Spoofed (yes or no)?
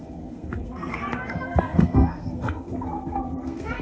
yes